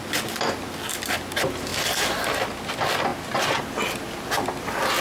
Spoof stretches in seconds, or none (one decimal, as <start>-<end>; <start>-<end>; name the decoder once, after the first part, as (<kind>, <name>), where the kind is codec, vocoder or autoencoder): none